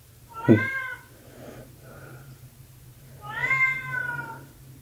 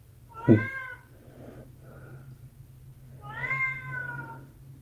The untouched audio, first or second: second